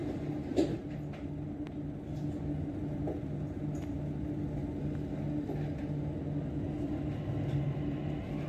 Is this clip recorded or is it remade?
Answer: recorded